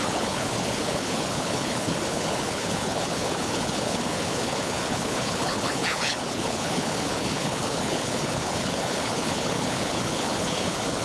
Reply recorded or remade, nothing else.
remade